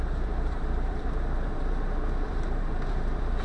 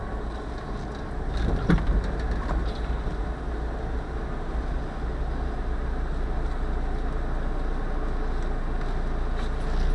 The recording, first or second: second